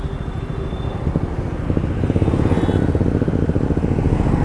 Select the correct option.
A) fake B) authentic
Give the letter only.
B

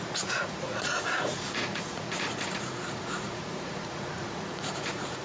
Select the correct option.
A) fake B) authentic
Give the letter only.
A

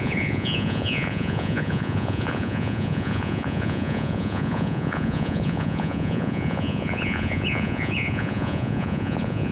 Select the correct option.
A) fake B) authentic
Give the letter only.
A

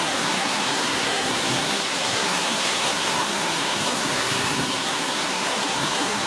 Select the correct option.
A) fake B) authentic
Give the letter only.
A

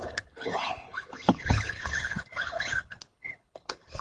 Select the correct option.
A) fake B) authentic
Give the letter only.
A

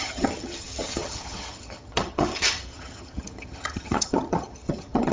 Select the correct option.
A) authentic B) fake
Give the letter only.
B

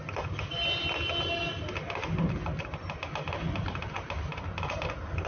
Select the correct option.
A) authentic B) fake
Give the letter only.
A